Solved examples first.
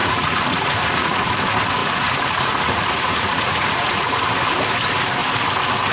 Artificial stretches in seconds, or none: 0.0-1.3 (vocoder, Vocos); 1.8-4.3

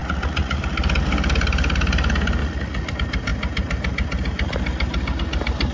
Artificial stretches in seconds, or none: 0.0-0.6 (vocoder, Vocos); 2.4-2.9

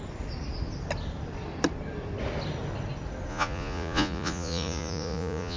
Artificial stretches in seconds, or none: 3.3-5.6 (vocoder, Vocos)

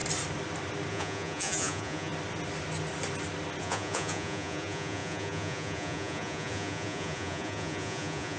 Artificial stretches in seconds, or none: 0.9-2.1 (vocoder, Vocos); 3.6-8.4